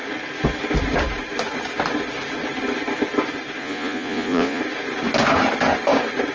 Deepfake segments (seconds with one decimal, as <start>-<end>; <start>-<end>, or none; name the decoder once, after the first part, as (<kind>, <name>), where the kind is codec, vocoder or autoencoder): 3.6-4.6 (vocoder, Vocos)